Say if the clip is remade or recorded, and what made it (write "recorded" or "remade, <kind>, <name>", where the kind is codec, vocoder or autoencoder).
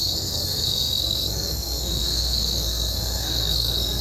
remade, codec, SNAC